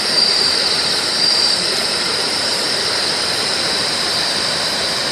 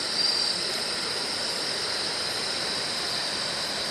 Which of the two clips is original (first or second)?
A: second